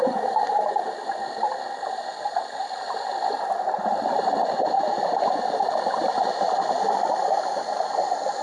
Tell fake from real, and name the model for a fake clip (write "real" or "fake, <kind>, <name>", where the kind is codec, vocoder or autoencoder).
real